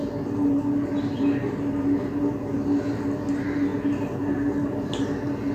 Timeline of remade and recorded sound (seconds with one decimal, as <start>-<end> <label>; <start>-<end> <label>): 0.0-5.5 recorded